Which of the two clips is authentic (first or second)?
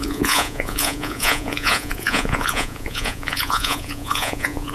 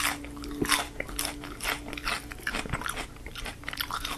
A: second